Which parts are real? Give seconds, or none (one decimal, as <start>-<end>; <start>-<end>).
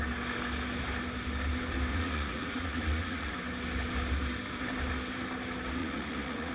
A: 0.0-1.9; 3.3-5.8